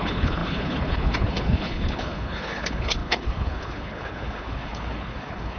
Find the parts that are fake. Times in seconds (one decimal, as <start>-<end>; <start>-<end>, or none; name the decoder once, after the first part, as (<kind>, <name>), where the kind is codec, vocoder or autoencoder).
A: 0.0-5.6 (codec, HILCodec)